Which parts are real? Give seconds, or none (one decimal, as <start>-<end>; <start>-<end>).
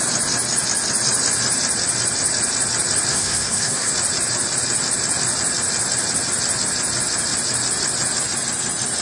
0.0-3.1; 3.9-9.0